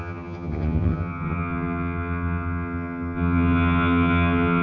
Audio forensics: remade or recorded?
remade